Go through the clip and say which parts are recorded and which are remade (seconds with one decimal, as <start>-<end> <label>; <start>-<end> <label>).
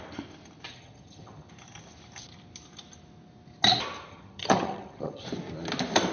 0.0-0.7 recorded; 0.7-1.5 remade; 1.5-4.1 recorded; 4.1-5.2 remade; 5.2-6.1 recorded